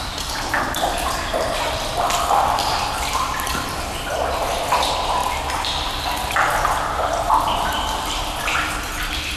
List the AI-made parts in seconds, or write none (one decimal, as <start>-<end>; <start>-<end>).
none